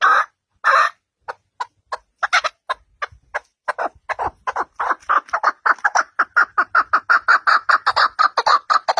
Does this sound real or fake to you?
real